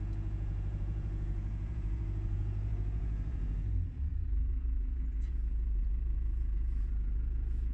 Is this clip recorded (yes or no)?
no